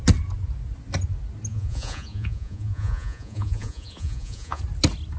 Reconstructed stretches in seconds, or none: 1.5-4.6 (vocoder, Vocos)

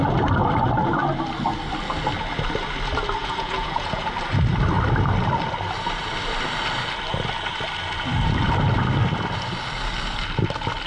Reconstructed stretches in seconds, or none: 3.2-4.1 (vocoder, Vocos)

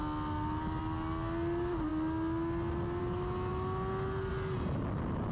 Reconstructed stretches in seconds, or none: none

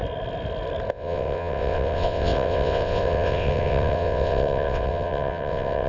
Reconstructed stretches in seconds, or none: 0.9-5.9 (vocoder, WaveNeXt)

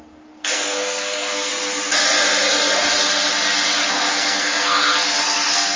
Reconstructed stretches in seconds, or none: 0.0-1.5 (codec, SNAC); 3.9-5.8